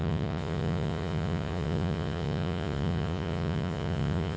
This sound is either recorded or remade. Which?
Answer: remade